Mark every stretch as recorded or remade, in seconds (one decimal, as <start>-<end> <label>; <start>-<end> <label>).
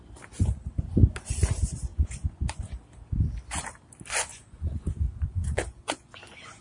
0.0-1.9 recorded; 1.9-2.6 remade; 2.6-4.3 recorded; 4.3-6.6 remade